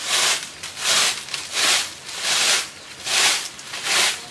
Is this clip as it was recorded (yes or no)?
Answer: yes